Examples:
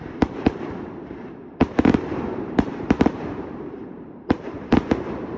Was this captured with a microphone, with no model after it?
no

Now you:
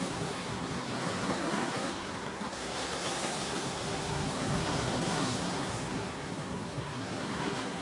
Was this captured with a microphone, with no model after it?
no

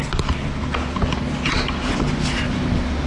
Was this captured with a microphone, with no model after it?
yes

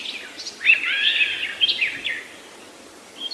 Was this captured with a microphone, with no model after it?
yes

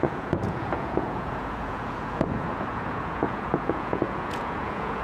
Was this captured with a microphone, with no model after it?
no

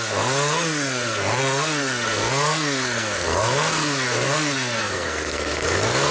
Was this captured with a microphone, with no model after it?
no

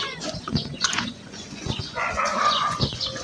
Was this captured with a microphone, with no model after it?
no